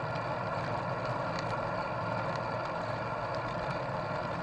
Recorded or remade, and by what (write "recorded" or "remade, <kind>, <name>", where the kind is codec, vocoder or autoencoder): recorded